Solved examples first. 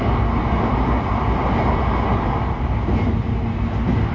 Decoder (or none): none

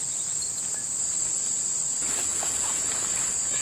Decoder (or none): none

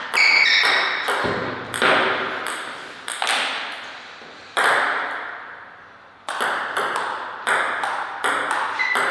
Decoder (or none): none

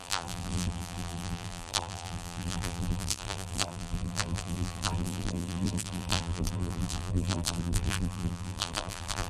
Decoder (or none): vocoder, BigVGAN v2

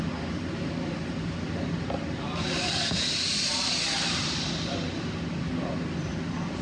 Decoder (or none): none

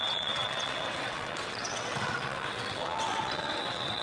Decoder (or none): vocoder, WaveNeXt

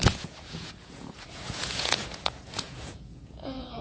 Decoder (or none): vocoder, Vocos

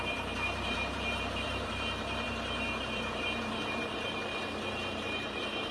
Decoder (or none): vocoder, BigVGAN v2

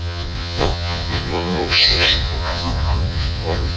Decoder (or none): vocoder, Vocos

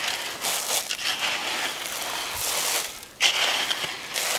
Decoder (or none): none